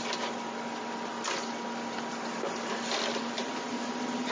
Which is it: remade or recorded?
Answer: recorded